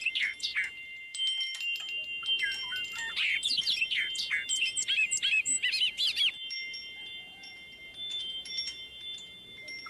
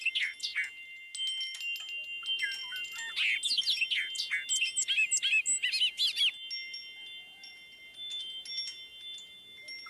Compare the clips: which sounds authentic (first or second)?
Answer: second